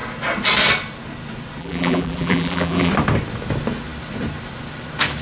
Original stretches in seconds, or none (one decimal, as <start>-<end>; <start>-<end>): 0.0-1.6; 2.9-5.2